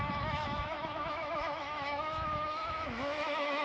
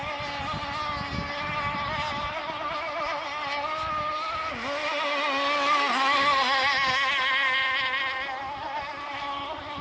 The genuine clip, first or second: second